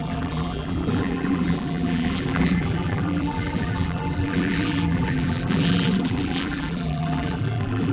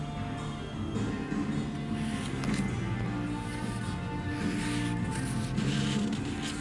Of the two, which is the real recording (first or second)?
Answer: second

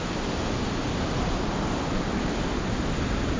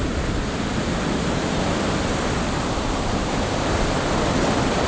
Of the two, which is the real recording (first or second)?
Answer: first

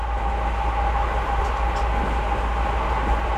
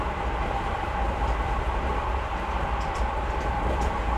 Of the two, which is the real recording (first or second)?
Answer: first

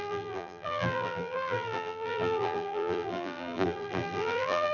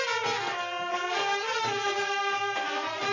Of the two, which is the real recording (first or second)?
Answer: second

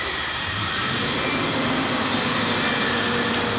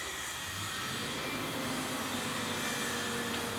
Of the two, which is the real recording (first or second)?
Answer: second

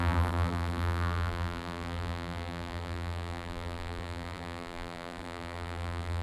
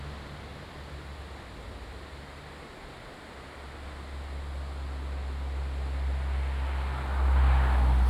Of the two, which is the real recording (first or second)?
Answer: second